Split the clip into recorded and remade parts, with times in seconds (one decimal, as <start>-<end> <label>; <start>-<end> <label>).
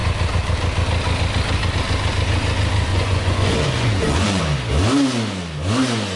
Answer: 0.0-2.9 recorded; 2.9-4.4 remade; 4.4-6.2 recorded